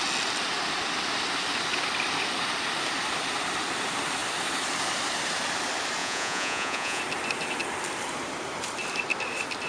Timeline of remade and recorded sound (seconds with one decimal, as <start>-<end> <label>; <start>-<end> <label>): 0.0-6.0 recorded; 6.0-7.0 remade; 7.0-9.7 recorded